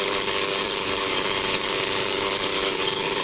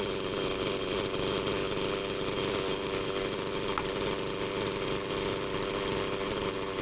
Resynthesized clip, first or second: first